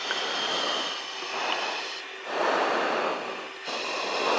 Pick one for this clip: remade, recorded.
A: recorded